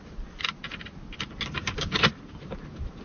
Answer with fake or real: real